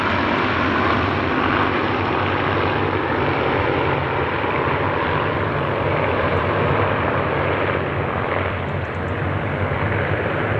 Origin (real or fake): real